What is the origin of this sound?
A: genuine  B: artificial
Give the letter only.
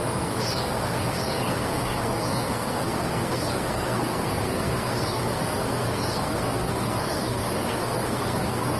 B